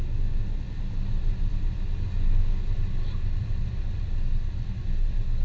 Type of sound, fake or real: real